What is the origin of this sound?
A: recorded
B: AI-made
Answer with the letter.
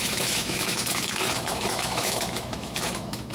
B